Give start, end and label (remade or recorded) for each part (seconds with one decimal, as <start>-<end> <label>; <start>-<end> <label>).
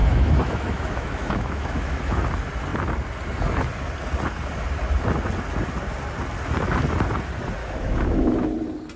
0.0-2.2 remade; 2.2-7.6 recorded; 7.6-8.5 remade; 8.5-9.0 recorded